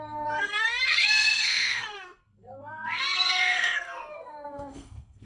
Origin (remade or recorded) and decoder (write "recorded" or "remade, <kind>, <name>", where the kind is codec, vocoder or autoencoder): remade, codec, SNAC